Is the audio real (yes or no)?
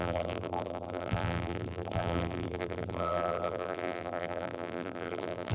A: no